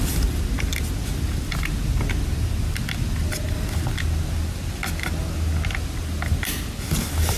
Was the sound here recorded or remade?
recorded